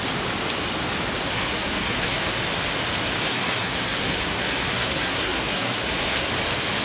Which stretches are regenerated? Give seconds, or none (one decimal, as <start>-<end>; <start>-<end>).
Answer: 1.2-2.4; 3.3-6.3